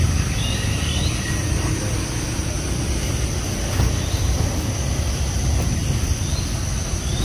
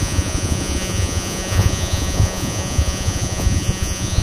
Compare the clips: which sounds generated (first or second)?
second